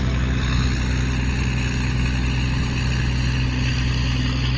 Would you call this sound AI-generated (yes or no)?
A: no